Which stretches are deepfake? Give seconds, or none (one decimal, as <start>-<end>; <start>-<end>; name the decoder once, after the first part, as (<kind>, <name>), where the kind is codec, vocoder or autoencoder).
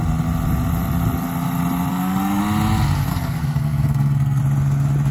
1.9-2.4 (codec, SNAC); 3.1-4.4